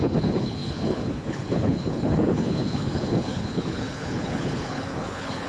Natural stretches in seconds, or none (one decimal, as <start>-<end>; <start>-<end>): none